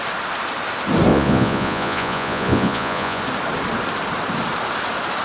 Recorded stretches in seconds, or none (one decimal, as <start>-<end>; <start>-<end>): 0.0-1.1; 3.2-5.2